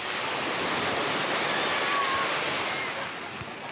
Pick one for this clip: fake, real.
real